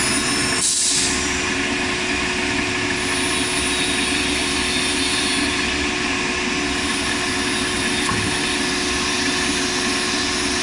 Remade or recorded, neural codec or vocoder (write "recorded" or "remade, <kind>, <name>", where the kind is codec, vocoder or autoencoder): recorded